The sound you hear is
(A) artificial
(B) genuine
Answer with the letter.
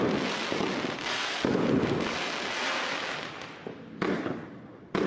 B